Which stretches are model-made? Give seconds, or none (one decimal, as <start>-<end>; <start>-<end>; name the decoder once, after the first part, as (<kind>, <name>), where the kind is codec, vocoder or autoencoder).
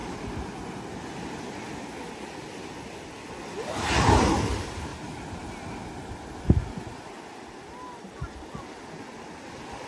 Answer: 0.0-0.7 (vocoder, BigVGAN v2); 4.9-5.5